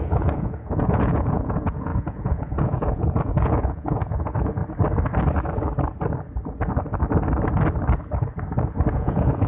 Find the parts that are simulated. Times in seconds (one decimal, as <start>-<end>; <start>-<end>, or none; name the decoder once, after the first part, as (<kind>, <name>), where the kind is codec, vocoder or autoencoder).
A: 0.0-4.6 (vocoder, Vocos); 8.9-9.5